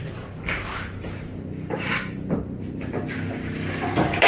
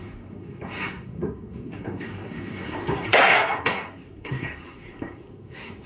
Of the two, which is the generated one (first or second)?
second